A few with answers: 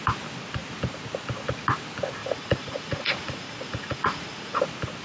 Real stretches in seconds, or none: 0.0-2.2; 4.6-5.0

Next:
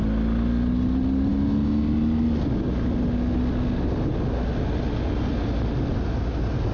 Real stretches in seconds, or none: 0.0-6.7

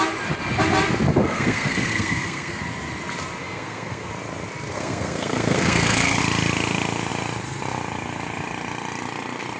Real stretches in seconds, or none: 0.0-1.1; 2.6-3.4; 4.1-4.7; 6.2-9.6